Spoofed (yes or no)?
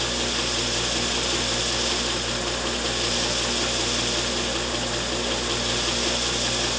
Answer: no